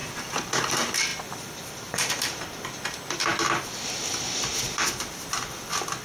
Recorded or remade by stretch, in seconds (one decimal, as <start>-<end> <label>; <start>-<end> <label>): 0.0-6.0 remade